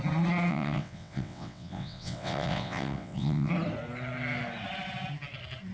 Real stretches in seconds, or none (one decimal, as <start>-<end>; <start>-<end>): 0.0-0.5; 3.5-5.7